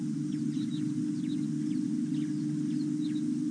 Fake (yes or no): no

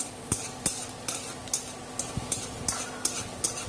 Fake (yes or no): no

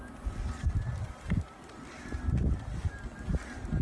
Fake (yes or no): no